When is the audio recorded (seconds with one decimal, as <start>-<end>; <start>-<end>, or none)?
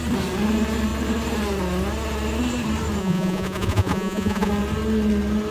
0.0-3.0; 4.5-5.5